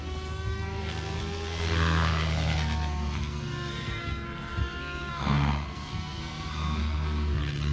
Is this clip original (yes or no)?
no